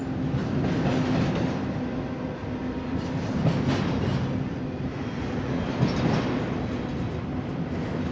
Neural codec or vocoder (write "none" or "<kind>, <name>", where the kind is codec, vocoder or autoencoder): none